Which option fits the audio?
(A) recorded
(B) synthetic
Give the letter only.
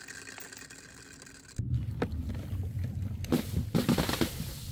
A